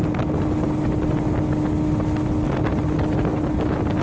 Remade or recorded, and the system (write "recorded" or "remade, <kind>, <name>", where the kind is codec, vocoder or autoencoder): recorded